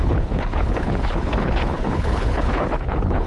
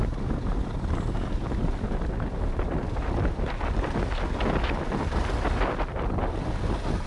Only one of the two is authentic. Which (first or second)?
second